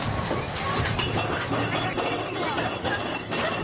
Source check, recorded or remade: remade